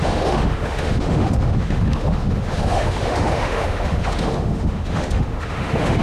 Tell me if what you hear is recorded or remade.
remade